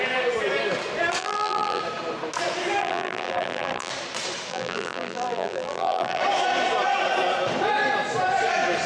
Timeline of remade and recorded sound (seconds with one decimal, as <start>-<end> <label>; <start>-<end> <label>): 0.0-1.2 recorded; 1.2-1.8 remade; 1.8-2.8 recorded; 2.8-3.9 remade; 3.9-4.5 recorded; 4.5-6.2 remade; 6.2-8.9 recorded